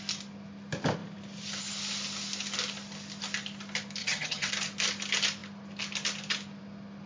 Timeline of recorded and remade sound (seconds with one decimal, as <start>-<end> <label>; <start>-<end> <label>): 0.0-4.0 recorded; 4.0-4.5 remade; 4.5-7.1 recorded